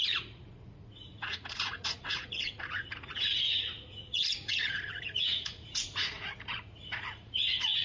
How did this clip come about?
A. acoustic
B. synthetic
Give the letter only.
B